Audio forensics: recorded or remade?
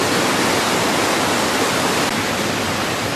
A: recorded